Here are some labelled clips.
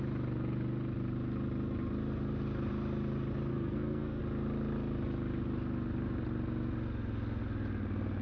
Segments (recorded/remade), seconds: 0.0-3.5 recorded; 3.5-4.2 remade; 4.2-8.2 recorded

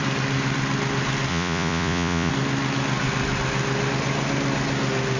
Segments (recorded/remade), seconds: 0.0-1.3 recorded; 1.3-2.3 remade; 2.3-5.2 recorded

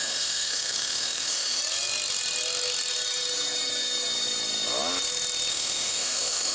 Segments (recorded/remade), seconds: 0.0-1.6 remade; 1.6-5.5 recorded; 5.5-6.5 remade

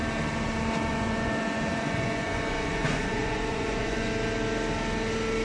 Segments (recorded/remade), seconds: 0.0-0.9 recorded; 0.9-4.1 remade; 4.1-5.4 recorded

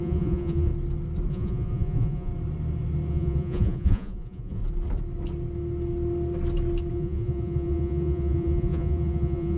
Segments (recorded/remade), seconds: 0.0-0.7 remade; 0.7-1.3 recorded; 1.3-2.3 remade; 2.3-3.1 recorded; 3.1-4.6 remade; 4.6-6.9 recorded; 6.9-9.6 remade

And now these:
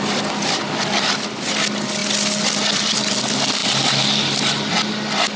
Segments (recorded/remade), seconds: 0.0-5.4 recorded